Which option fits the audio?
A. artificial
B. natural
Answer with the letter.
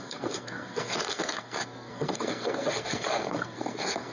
A